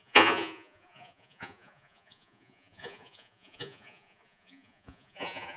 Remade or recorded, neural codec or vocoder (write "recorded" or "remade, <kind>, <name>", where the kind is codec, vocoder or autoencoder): remade, vocoder, Vocos